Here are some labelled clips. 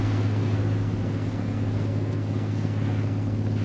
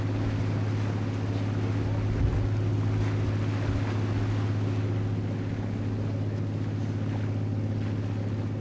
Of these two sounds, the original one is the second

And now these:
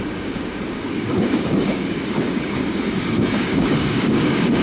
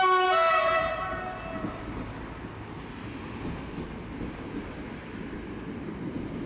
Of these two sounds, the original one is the second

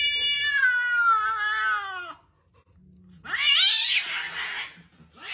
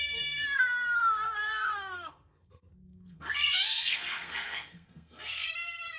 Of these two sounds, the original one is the first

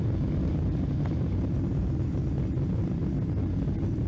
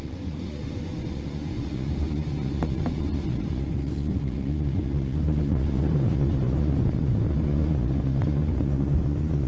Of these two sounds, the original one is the first